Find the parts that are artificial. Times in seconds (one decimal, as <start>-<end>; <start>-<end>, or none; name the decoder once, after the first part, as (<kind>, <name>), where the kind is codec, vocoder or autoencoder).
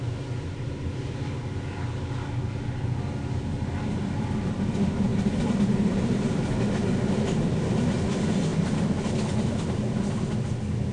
none